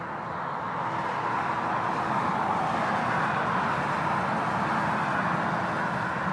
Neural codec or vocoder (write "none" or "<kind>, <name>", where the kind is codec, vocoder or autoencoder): none